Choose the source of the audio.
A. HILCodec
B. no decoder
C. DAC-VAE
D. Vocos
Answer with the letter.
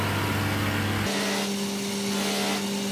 B